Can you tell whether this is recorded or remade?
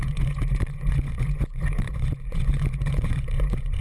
remade